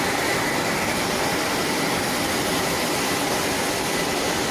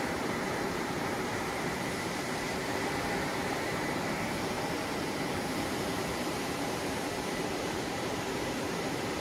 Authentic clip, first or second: first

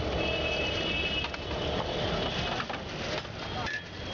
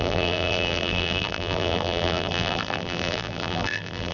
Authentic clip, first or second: first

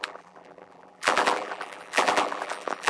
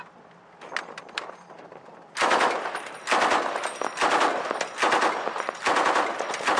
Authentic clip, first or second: second